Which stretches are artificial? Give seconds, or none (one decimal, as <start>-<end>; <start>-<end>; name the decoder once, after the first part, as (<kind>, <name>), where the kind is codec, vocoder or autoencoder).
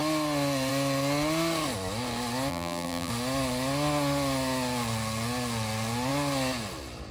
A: 2.5-3.1 (vocoder, BigVGAN v2)